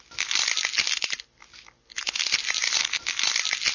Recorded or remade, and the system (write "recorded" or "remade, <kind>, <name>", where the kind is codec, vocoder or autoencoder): recorded